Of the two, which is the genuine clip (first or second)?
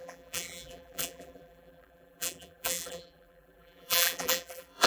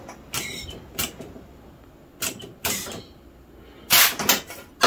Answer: second